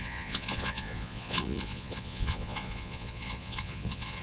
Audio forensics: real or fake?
fake